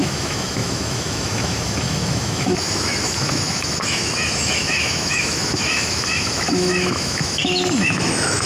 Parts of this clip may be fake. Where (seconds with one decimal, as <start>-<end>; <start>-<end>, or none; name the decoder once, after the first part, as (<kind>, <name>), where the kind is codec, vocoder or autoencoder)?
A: 0.0-8.5 (autoencoder, DAC-VAE)